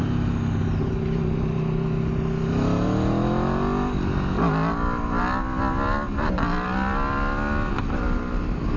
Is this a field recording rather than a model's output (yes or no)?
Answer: yes